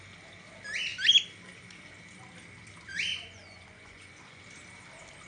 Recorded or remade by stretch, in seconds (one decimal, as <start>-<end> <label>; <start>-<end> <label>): 0.0-3.1 recorded; 3.1-4.4 remade; 4.4-5.3 recorded